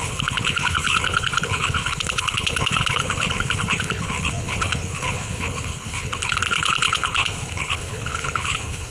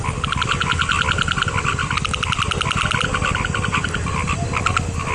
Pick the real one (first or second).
second